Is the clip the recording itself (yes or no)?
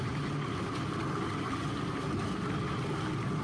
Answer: yes